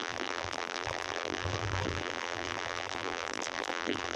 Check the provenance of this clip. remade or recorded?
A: remade